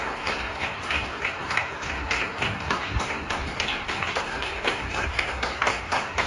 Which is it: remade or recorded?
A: remade